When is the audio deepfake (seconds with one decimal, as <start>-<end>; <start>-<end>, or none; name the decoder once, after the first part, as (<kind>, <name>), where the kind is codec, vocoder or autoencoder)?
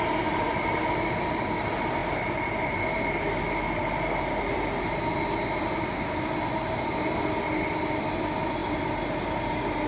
none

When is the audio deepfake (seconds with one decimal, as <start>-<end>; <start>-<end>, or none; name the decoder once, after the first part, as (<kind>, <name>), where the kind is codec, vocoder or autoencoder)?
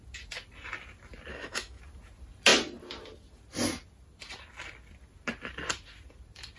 1.3-1.8 (autoencoder, DAC-VAE)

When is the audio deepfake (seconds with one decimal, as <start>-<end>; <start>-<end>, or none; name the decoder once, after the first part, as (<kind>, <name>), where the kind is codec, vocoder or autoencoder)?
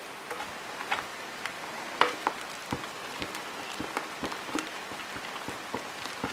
1.1-4.9 (vocoder, BigVGAN v2)